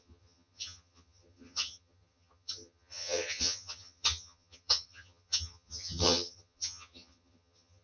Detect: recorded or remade remade